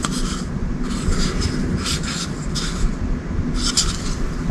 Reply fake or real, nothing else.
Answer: real